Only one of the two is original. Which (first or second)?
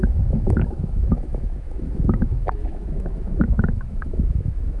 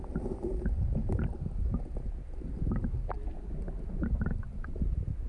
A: second